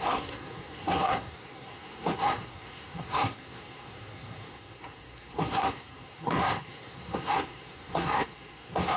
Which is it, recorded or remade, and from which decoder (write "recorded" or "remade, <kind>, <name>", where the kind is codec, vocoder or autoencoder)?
remade, codec, SNAC